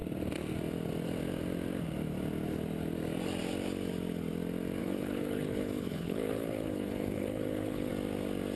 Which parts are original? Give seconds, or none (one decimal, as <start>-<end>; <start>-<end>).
0.0-4.8; 7.9-8.6